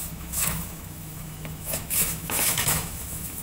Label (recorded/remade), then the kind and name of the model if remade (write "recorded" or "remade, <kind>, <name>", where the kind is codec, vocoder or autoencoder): remade, autoencoder, DAC-VAE